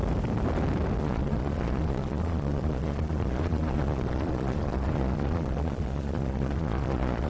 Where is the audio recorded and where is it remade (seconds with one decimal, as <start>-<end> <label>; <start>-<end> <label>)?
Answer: 0.0-1.0 recorded; 1.0-7.3 remade